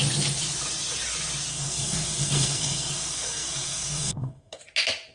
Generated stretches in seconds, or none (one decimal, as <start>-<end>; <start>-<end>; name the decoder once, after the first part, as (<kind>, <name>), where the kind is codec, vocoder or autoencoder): 1.5-4.6 (codec, SNAC)